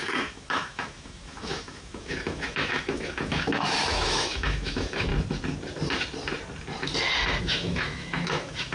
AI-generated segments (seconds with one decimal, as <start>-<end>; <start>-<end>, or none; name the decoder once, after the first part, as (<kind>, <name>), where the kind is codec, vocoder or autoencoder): 0.0-5.1 (autoencoder, DAC-VAE); 7.4-8.7

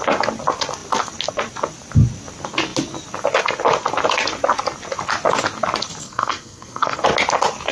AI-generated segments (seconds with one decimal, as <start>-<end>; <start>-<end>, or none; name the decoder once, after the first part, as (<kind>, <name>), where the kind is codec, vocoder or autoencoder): 6.0-7.0 (codec, SNAC)

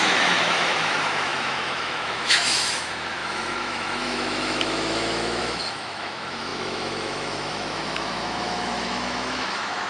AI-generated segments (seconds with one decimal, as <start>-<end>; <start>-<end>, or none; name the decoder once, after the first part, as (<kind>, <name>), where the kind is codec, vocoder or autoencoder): 0.0-9.9 (autoencoder, DAC-VAE)

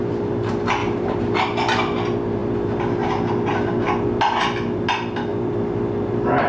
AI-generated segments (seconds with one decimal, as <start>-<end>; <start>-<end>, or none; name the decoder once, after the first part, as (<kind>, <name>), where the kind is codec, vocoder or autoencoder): 0.8-1.4 (vocoder, BigVGAN v2)

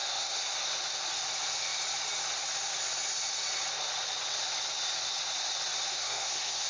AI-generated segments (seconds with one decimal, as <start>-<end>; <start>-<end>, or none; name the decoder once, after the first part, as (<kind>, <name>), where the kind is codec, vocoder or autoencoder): 0.0-0.6 (codec, SNAC); 5.9-6.7